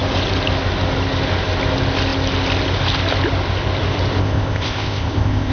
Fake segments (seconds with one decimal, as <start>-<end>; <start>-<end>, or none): 4.2-5.5